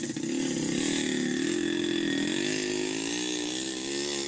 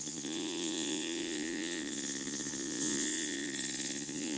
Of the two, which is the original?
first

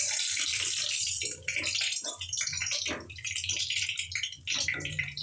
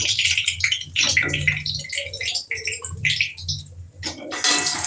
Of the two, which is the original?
second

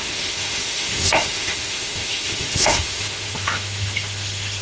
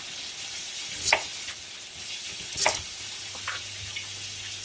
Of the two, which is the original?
second